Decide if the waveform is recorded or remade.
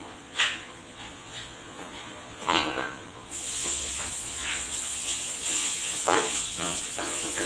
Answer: remade